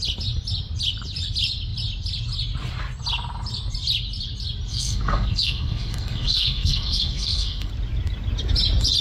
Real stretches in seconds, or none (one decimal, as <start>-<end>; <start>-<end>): 0.0-4.7; 7.7-9.0